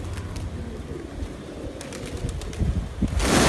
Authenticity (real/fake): real